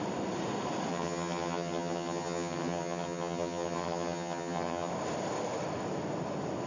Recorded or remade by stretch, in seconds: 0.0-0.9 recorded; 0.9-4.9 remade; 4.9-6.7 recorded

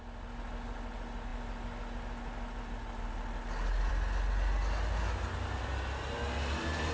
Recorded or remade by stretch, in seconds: 0.0-6.9 recorded

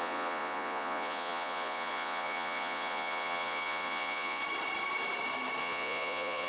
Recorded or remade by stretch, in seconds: 0.0-4.4 remade; 4.4-5.6 recorded; 5.6-6.5 remade

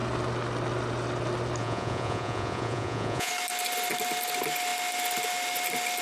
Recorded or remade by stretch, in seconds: 0.0-1.6 recorded; 1.6-3.3 remade; 3.3-6.0 recorded

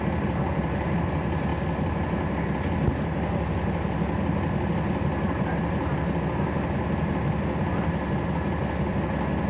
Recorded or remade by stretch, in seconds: 0.0-9.5 recorded

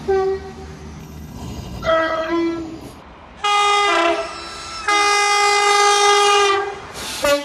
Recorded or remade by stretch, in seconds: 0.0-1.0 recorded; 1.0-2.3 remade; 2.3-7.4 recorded

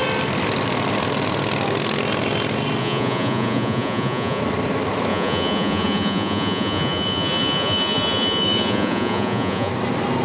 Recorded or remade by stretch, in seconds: 0.0-2.8 recorded; 2.8-4.4 remade; 4.4-5.1 recorded; 5.1-9.7 remade; 9.7-10.2 recorded

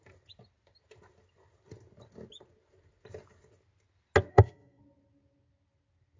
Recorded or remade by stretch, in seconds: 0.0-4.3 recorded; 4.3-4.8 remade; 4.8-6.2 recorded